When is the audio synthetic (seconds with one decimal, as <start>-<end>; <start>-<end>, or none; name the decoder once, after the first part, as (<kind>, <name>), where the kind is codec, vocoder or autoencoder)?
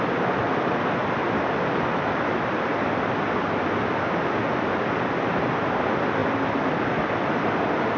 none